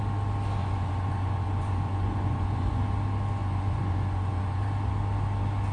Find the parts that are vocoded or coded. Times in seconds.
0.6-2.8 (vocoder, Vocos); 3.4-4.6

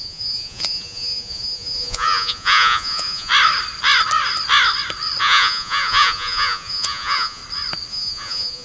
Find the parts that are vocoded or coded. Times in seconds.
0.0-3.3 (vocoder, Vocos); 5.2-7.4; 7.9-8.6